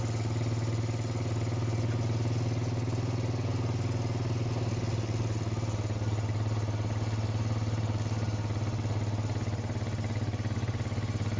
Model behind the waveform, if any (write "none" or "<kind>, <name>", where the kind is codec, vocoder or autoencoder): none